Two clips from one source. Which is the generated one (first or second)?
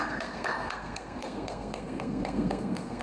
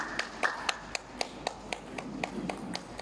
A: first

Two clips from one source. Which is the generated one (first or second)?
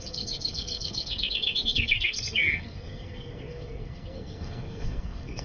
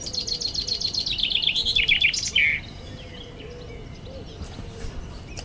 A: first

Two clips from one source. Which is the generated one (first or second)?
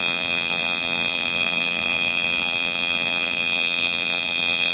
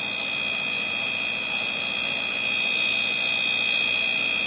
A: first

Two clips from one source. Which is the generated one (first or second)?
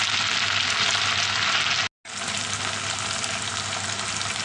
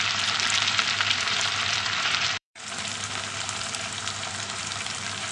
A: second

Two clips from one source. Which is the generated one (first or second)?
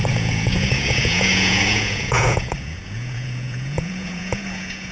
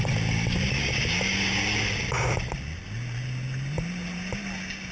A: first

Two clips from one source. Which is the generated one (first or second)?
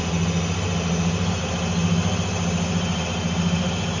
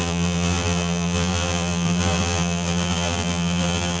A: second